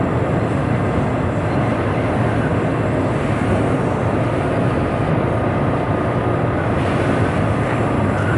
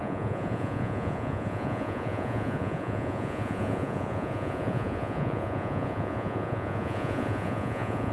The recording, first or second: first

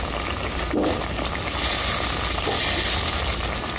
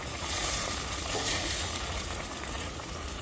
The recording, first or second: first